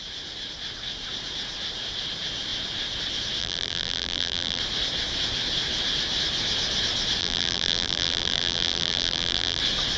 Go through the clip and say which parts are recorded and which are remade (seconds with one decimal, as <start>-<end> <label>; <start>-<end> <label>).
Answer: 0.0-3.4 recorded; 3.4-4.6 remade; 4.6-7.2 recorded; 7.2-9.6 remade; 9.6-10.0 recorded